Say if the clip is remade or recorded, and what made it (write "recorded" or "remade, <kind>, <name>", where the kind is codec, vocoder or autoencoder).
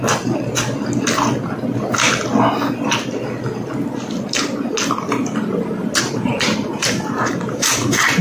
recorded